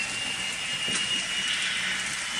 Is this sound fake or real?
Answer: real